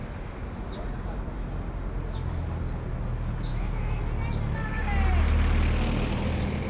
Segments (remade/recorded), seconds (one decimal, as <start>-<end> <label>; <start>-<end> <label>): 0.0-3.5 recorded; 3.5-4.0 remade; 4.0-6.7 recorded